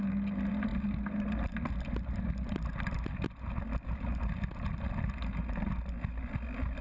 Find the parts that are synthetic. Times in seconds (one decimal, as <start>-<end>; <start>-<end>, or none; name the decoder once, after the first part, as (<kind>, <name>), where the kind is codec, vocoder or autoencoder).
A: none